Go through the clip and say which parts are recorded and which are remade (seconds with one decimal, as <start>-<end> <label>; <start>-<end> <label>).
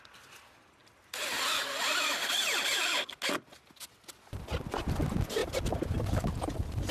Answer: 0.0-6.9 recorded